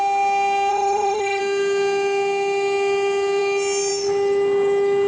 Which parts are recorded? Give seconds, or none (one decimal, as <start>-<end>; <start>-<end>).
0.0-0.7; 1.4-5.1